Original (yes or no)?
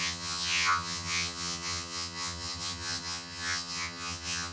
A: no